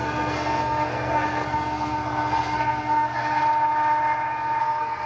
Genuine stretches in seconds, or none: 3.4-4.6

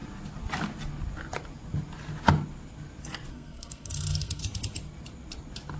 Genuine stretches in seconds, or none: 0.0-3.3; 4.4-5.8

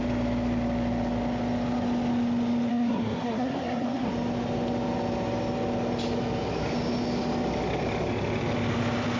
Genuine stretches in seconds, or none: 0.0-2.7; 4.1-9.2